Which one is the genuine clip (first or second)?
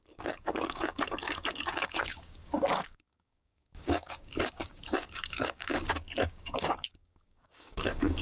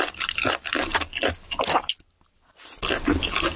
second